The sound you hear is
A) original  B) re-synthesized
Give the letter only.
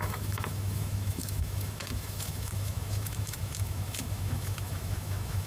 B